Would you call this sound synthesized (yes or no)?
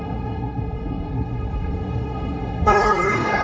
yes